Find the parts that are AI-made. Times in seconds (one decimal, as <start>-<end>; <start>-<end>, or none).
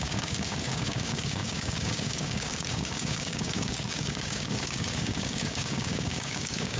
0.0-6.8